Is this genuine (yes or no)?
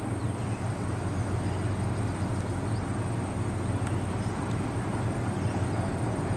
yes